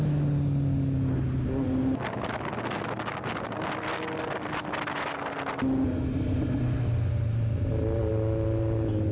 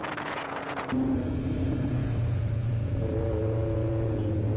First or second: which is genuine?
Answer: first